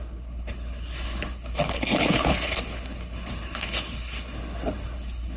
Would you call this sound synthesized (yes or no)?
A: yes